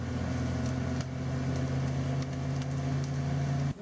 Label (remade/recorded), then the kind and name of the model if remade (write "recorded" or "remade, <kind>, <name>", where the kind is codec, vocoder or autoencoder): recorded